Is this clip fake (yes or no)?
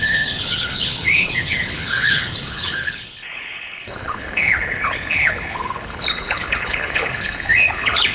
yes